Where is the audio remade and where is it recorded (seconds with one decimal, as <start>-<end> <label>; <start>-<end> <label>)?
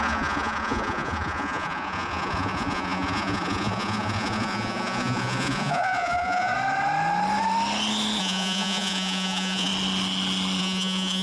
0.0-6.5 remade; 6.5-8.2 recorded; 8.2-9.7 remade; 9.7-10.6 recorded; 10.6-11.2 remade